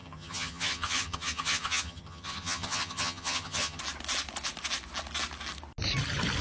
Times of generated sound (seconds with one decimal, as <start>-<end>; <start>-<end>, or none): 0.0-3.8